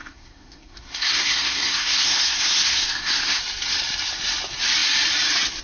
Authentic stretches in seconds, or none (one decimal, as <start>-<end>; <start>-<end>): 3.4-5.6